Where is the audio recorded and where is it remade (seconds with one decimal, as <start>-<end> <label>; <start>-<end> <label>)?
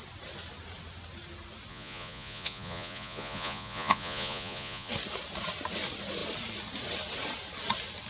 0.0-1.7 recorded; 1.7-4.9 remade; 4.9-8.1 recorded